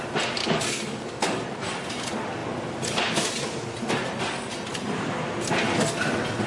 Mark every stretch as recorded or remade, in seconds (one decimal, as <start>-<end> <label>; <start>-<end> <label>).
0.0-0.4 recorded; 0.4-1.4 remade; 1.4-6.5 recorded